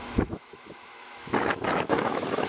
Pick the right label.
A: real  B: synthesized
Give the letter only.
B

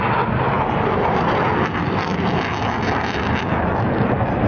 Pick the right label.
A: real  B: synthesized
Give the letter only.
A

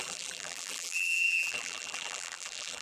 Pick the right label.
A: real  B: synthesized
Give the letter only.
B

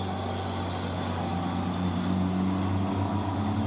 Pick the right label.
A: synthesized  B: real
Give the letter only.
B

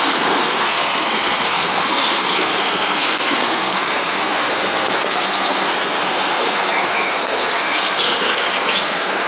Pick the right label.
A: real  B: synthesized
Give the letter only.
B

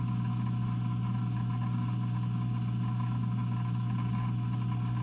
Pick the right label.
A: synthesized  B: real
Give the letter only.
B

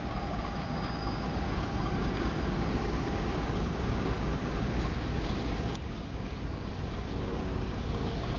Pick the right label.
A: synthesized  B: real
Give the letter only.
A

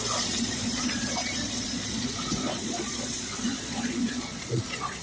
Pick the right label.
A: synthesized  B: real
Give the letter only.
A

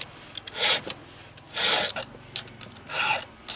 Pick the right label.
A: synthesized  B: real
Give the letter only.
B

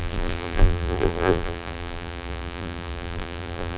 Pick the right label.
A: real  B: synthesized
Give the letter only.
B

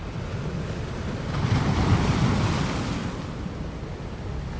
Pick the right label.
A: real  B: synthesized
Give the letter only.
A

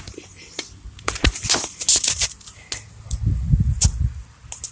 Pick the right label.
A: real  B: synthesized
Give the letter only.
A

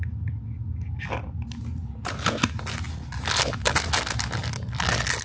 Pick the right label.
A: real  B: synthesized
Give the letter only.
A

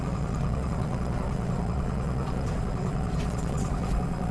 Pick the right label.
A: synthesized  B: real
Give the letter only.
A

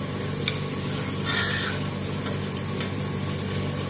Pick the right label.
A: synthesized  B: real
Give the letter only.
B